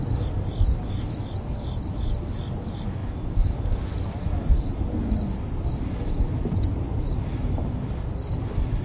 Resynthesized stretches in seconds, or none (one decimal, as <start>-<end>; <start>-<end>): none